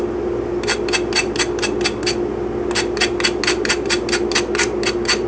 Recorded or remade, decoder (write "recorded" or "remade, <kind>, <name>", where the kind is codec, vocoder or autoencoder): recorded